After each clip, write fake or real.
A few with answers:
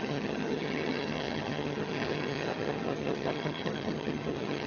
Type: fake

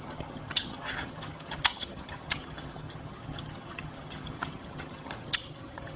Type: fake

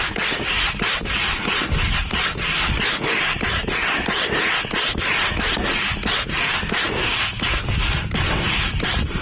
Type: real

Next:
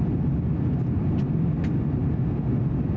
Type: real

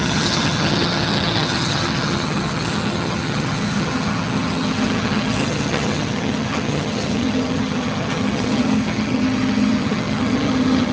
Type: fake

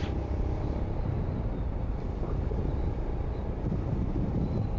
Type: real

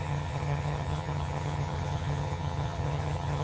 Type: fake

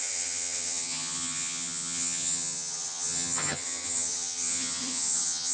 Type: fake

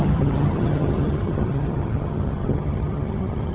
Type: fake